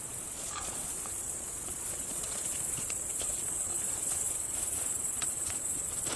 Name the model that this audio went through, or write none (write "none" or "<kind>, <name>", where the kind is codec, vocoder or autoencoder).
vocoder, Vocos